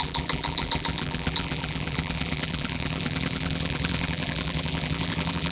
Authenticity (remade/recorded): remade